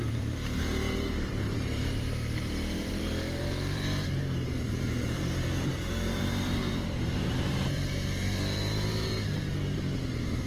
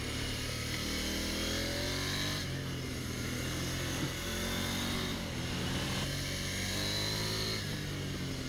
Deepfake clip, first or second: first